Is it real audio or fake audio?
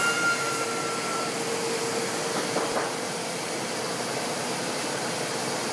real